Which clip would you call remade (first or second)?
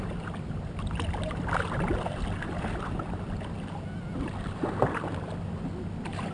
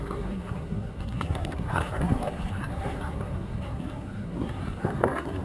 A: second